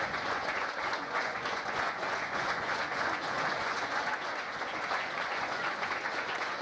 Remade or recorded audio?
remade